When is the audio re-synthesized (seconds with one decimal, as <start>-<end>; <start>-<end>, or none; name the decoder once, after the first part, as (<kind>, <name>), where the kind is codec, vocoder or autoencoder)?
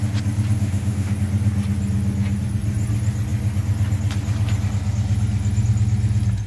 0.6-1.1 (autoencoder, DAC-VAE)